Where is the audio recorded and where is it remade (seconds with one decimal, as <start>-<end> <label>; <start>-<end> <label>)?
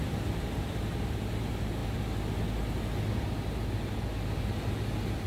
0.0-5.3 recorded